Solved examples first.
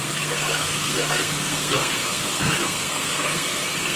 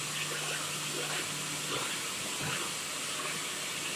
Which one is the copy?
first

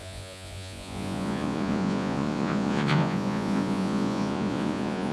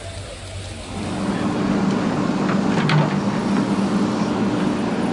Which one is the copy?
first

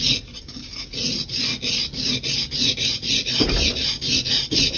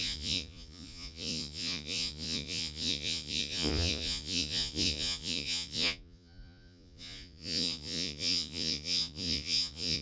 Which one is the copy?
second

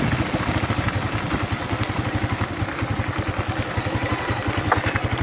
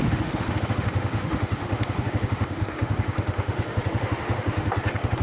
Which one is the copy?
second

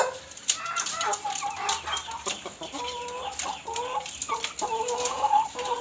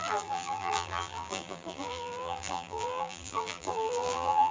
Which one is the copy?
second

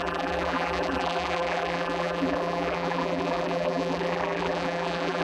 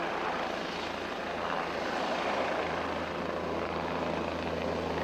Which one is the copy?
first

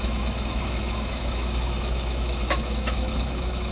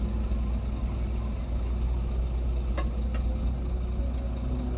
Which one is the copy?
first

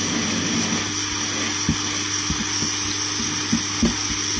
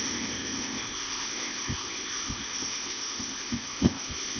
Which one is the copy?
second